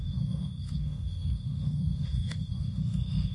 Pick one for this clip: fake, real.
fake